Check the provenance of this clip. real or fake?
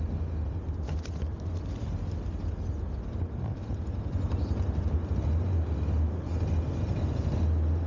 real